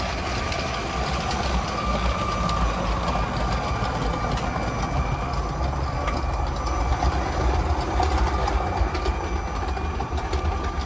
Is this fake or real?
real